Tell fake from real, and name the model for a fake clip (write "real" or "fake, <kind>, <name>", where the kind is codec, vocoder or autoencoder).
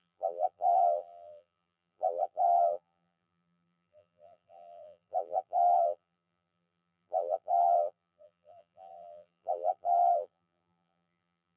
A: fake, vocoder, BigVGAN v2